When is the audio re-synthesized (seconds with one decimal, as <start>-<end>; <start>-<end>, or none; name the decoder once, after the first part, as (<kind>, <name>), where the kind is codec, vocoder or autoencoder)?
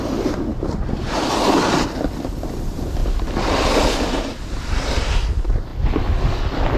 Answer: none